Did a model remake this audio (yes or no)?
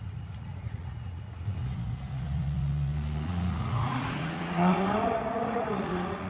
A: yes